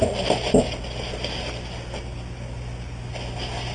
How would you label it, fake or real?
real